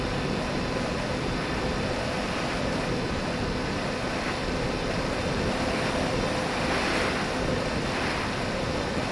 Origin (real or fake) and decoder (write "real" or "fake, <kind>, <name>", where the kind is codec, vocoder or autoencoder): real